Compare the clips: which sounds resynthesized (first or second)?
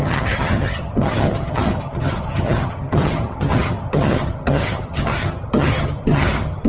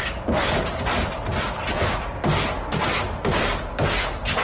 first